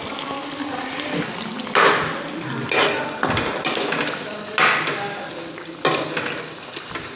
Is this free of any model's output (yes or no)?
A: yes